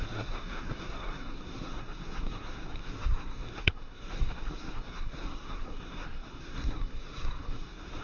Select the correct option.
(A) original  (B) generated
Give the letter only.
B